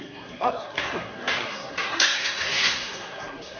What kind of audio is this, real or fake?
fake